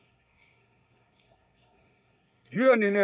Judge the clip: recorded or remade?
remade